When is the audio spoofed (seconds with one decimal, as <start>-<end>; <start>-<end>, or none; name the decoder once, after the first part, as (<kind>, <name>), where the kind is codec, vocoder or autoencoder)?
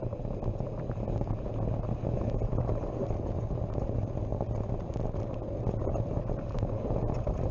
none